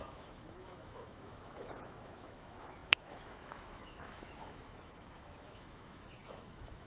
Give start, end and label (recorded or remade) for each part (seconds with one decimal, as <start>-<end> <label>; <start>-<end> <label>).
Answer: 0.0-6.9 remade